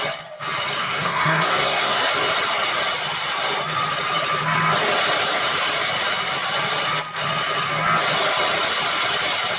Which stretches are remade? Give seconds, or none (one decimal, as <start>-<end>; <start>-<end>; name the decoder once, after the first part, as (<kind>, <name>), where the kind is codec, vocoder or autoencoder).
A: 0.8-2.1 (codec, SNAC)